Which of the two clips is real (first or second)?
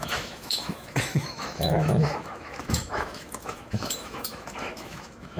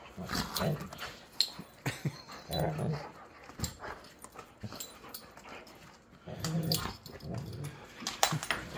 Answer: second